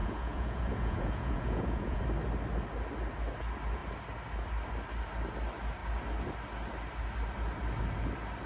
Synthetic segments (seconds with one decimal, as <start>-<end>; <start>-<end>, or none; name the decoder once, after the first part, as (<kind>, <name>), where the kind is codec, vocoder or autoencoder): 0.0-2.0 (vocoder, Vocos)